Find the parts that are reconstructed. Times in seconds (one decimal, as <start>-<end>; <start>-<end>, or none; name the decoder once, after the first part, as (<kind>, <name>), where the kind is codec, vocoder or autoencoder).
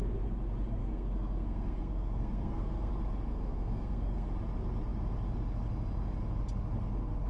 0.8-2.9 (codec, SNAC); 3.3-4.3